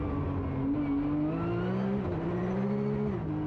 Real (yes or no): yes